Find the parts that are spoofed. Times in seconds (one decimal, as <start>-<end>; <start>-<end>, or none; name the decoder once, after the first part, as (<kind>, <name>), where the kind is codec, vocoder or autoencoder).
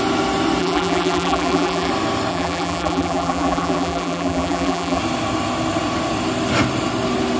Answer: 0.6-1.9 (vocoder, BigVGAN v2); 2.3-5.0